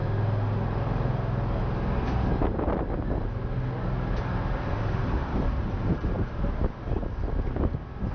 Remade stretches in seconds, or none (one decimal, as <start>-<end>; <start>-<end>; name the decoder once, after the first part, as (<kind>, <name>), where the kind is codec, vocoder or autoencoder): 5.2-6.6 (vocoder, BigVGAN v2)